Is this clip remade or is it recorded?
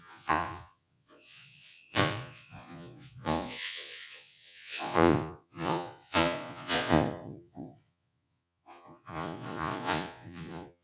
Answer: remade